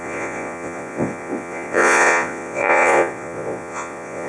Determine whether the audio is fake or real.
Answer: fake